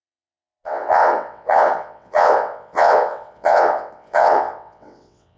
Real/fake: fake